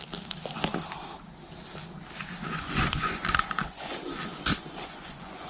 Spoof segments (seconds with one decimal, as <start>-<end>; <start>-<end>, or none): 2.5-5.5